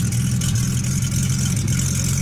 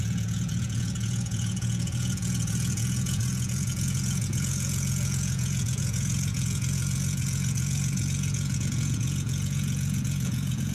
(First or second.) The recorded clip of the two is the first